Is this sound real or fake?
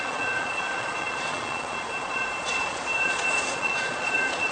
fake